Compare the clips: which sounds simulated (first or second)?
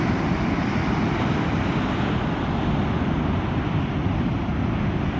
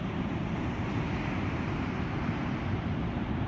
second